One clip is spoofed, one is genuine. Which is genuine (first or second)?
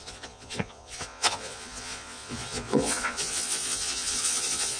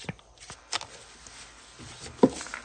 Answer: second